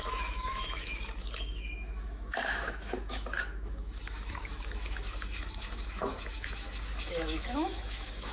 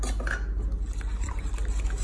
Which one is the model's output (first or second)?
first